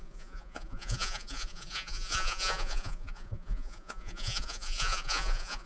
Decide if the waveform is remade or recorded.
remade